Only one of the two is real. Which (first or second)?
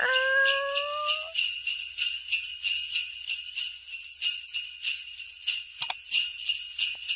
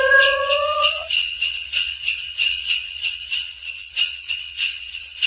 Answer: first